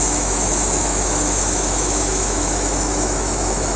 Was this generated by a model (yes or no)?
yes